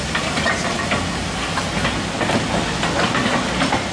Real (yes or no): yes